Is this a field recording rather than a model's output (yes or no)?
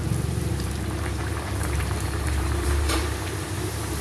no